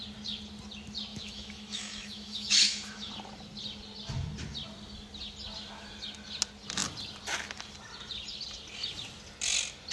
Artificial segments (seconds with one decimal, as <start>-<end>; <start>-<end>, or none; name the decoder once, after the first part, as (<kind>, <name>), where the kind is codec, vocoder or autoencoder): 1.1-3.1 (autoencoder, DAC-VAE)